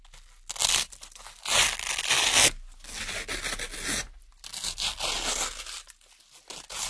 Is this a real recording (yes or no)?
yes